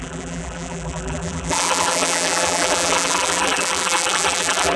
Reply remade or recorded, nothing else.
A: remade